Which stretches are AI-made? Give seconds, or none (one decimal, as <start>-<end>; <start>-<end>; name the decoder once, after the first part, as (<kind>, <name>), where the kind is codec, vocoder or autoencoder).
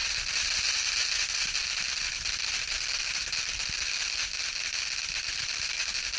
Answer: none